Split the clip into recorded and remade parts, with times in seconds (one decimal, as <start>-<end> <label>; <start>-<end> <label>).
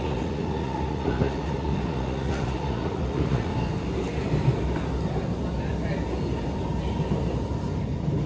0.0-3.5 remade; 3.5-8.3 recorded